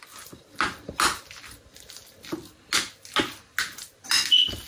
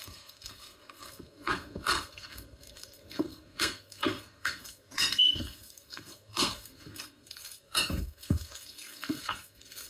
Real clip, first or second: first